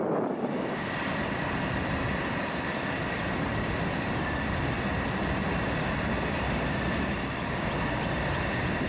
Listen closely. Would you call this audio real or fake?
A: fake